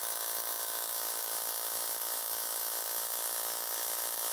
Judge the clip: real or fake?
fake